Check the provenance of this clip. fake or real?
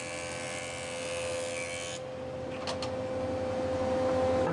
real